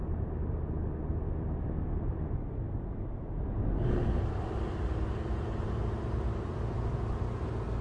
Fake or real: real